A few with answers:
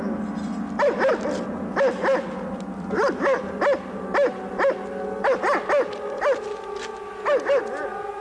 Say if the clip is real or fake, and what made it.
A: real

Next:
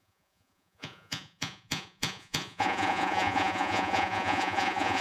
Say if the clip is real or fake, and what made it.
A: fake, vocoder, Vocos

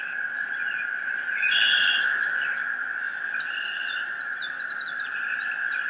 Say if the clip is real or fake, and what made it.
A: real